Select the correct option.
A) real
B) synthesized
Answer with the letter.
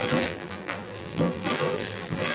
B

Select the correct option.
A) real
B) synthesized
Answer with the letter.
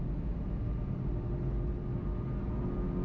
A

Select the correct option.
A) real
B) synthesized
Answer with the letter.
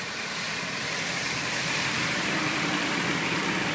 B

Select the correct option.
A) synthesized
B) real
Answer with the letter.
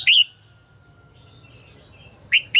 B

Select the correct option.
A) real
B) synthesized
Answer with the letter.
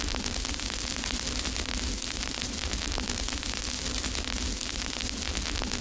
A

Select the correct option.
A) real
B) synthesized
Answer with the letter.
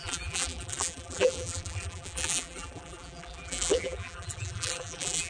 B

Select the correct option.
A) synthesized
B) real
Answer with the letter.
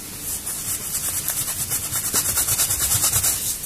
B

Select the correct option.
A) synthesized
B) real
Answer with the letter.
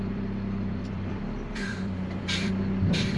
A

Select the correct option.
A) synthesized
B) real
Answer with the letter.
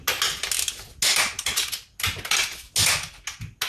B